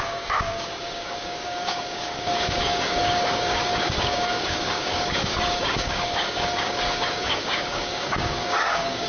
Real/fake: fake